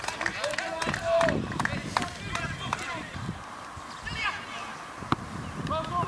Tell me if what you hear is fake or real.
real